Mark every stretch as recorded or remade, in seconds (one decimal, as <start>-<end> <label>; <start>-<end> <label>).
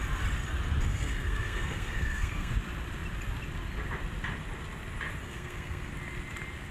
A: 0.0-0.9 recorded; 0.9-2.5 remade; 2.5-5.2 recorded; 5.2-5.9 remade; 5.9-6.7 recorded